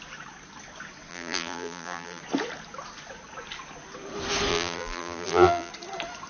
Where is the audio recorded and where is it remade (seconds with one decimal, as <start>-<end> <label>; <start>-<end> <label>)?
0.0-1.1 recorded; 1.1-2.2 remade; 2.2-4.5 recorded; 4.5-5.7 remade; 5.7-6.3 recorded